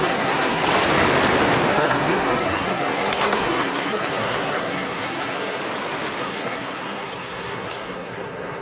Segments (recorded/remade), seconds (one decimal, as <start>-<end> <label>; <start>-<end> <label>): 0.0-0.6 remade; 0.6-1.7 recorded; 1.7-5.6 remade; 5.6-6.2 recorded; 6.2-8.6 remade